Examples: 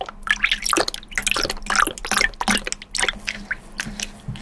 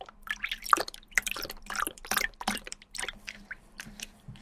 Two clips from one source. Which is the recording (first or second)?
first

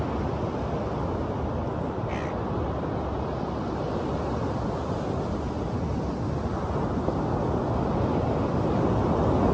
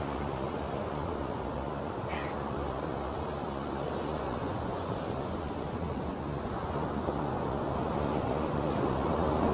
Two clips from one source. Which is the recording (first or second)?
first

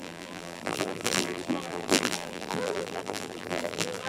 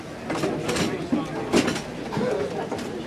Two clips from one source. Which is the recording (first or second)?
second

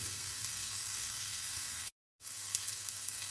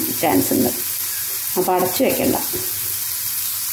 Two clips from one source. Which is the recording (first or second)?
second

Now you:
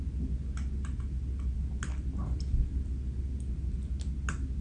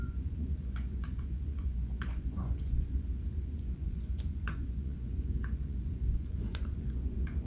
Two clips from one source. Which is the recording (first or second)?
first